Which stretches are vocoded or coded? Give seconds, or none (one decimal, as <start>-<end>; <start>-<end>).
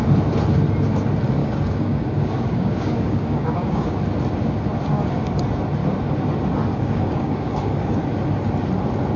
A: 1.4-3.9; 6.7-8.0